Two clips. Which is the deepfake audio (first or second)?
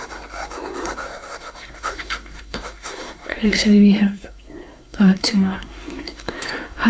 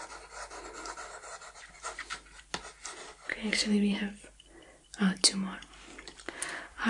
first